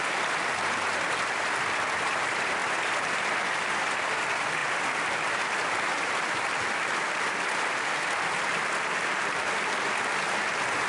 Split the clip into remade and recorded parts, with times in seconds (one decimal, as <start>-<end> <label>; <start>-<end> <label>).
0.0-10.9 recorded